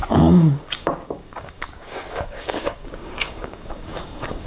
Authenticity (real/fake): fake